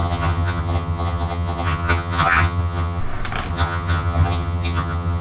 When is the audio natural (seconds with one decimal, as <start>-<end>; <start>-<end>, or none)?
3.0-3.5

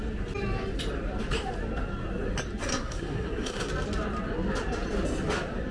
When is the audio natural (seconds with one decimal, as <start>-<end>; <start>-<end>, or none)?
0.0-2.7; 3.7-5.7